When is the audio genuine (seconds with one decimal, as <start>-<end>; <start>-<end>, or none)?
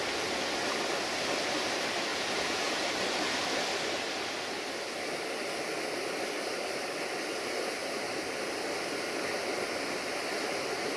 0.0-2.1; 2.9-11.0